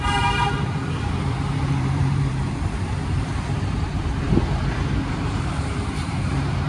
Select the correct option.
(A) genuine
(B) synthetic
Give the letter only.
B